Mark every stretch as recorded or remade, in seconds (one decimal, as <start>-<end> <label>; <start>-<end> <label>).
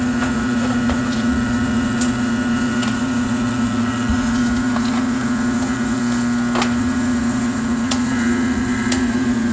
0.0-6.0 remade; 6.0-6.8 recorded; 6.8-9.5 remade